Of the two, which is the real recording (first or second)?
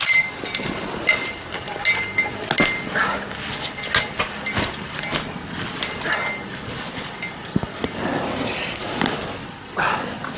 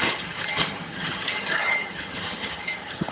first